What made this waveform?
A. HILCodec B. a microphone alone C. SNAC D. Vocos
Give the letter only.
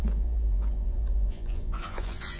D